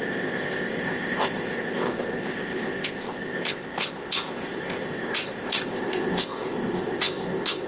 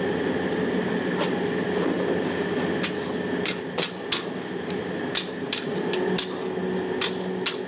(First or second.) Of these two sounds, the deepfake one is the first